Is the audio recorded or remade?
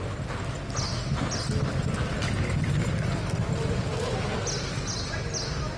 recorded